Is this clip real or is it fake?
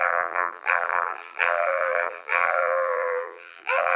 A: fake